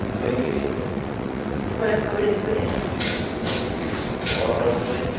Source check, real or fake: fake